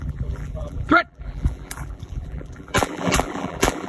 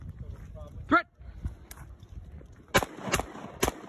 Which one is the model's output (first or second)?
first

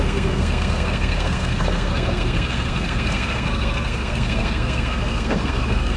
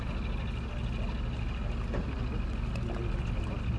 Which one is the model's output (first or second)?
first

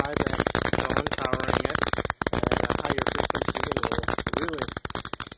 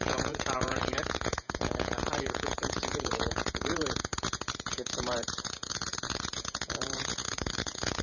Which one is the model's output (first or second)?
second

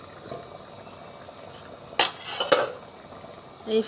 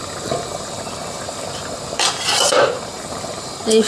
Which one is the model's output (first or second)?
second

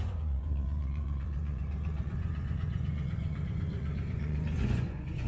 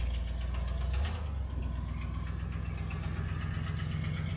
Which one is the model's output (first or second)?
first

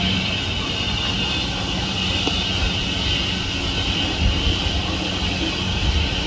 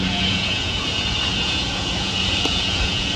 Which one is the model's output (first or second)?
second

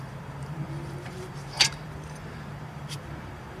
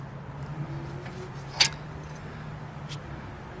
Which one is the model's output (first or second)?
first